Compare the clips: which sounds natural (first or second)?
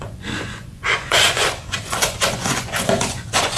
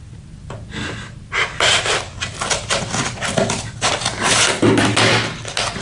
second